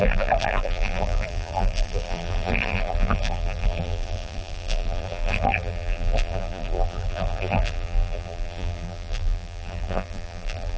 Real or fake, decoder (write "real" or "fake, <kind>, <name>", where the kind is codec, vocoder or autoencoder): fake, vocoder, BigVGAN v2